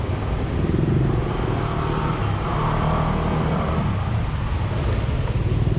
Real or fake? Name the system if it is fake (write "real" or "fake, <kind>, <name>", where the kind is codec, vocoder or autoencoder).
real